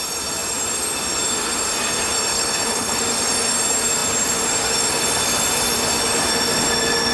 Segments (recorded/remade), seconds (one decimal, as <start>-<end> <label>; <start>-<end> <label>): 0.0-2.3 recorded; 2.3-3.0 remade; 3.0-7.1 recorded